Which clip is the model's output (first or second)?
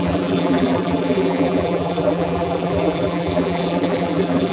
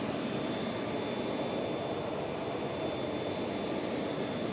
first